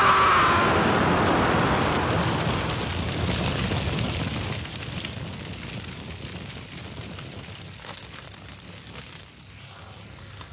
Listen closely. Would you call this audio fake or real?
real